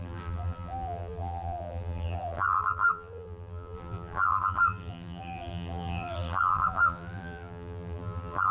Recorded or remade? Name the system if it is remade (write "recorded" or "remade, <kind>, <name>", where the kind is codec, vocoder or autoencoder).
remade, vocoder, BigVGAN v2